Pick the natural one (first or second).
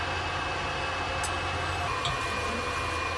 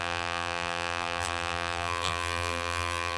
first